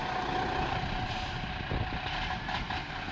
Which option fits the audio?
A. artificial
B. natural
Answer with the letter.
B